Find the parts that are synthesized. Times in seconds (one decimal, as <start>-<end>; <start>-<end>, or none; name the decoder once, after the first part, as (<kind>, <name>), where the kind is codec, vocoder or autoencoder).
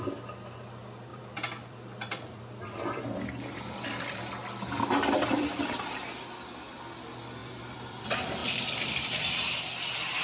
1.1-4.3 (vocoder, BigVGAN v2); 7.4-8.0; 8.4-9.6